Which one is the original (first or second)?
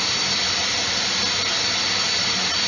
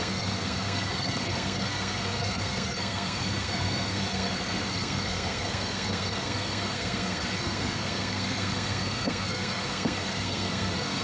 first